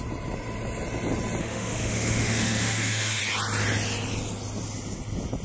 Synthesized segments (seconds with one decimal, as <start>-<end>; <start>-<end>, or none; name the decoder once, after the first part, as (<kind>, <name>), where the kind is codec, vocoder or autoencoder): 1.4-3.2 (autoencoder, DAC-VAE)